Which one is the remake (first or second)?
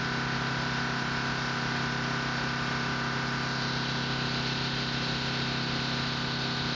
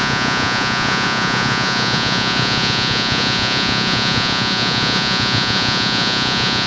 second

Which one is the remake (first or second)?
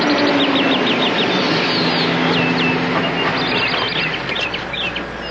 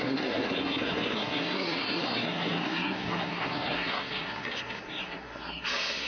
second